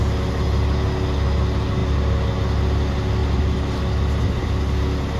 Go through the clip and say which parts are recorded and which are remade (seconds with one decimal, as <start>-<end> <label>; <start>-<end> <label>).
0.0-5.2 recorded